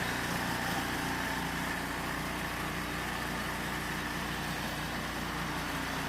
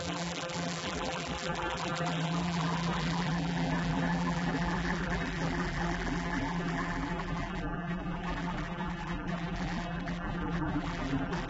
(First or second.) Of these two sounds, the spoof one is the second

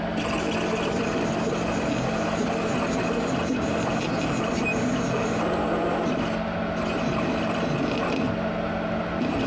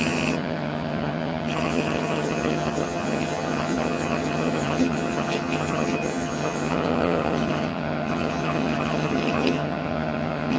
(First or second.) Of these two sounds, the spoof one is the second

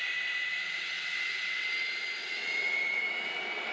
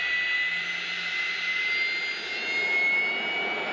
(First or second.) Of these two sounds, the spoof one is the first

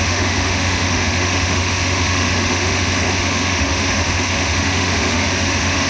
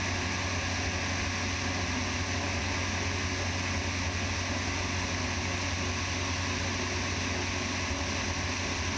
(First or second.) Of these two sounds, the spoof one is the first